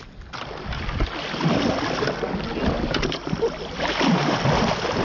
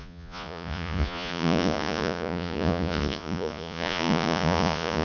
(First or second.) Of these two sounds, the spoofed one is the second